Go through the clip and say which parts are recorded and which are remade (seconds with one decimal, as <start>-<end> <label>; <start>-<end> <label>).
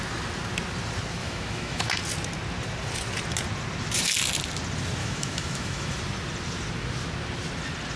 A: 0.0-1.2 recorded; 1.2-2.0 remade; 2.0-5.0 recorded; 5.0-6.0 remade; 6.0-8.0 recorded